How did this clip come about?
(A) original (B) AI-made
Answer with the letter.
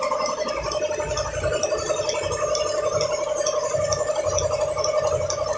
A